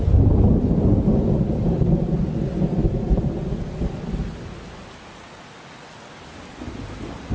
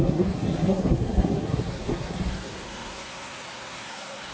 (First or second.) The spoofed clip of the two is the second